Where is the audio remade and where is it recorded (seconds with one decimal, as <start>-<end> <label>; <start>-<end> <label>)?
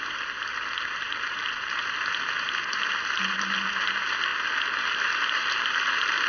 0.0-6.3 recorded